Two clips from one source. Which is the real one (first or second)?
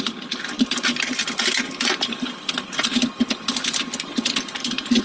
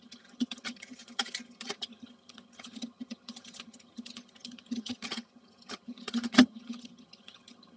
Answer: first